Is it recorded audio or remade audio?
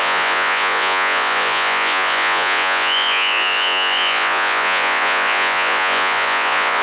remade